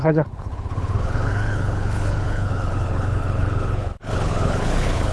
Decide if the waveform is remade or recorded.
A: remade